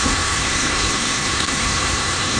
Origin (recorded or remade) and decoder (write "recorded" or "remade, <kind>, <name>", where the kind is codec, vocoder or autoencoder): remade, codec, SNAC